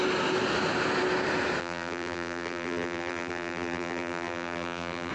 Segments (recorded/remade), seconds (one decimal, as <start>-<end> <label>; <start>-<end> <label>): 0.0-1.6 recorded; 1.6-5.1 remade